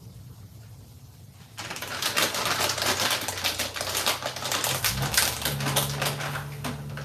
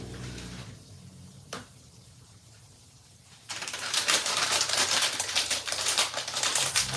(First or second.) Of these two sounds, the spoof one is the second